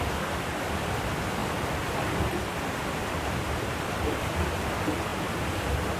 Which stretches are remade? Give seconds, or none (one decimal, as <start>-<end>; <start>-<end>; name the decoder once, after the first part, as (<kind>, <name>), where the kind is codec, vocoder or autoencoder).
none